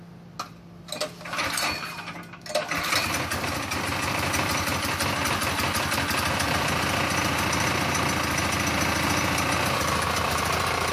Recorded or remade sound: recorded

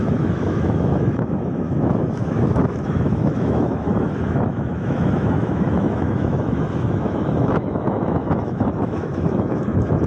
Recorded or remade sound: remade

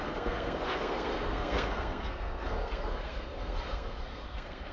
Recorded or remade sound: remade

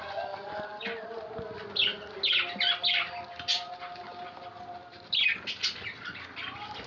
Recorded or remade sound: recorded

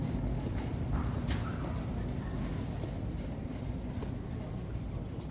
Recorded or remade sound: recorded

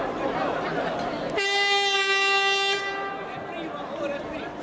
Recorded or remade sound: recorded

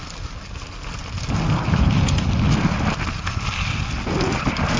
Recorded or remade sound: recorded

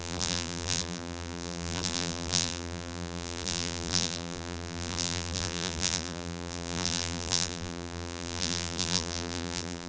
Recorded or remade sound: remade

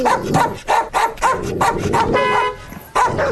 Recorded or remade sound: recorded